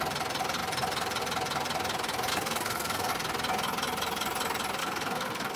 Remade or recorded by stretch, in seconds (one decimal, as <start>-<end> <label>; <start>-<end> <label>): 0.0-2.3 recorded; 2.3-3.1 remade; 3.1-4.8 recorded; 4.8-5.6 remade